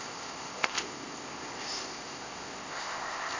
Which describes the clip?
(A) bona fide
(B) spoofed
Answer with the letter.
B